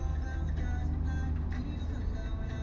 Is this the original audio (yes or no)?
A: yes